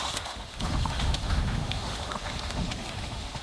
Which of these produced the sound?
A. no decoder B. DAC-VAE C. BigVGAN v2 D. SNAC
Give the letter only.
B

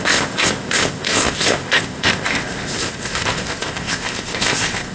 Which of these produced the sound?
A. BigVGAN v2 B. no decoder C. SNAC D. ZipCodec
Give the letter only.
D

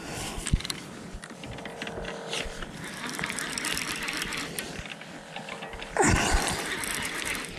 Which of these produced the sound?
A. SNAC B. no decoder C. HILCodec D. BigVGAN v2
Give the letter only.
D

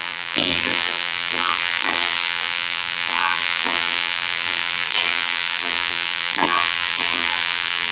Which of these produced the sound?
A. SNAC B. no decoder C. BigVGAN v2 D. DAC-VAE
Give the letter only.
C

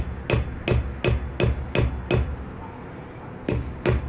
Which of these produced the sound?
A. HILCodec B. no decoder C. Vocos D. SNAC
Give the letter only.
B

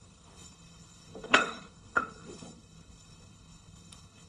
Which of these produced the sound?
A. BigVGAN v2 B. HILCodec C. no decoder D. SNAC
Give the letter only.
B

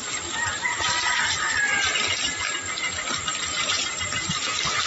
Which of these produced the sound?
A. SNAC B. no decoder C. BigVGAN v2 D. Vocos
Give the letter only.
B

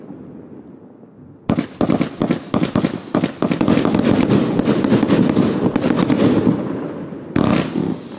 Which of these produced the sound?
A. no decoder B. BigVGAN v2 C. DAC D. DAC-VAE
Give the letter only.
A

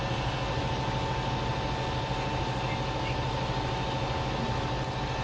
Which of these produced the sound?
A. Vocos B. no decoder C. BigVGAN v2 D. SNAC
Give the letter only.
B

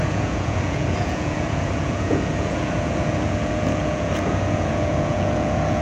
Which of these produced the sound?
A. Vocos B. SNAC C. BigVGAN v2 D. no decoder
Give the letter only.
A